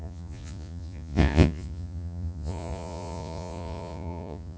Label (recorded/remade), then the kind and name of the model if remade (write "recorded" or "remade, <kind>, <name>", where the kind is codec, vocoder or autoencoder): remade, vocoder, Vocos